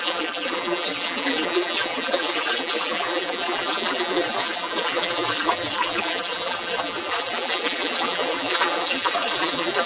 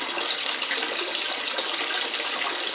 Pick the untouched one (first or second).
second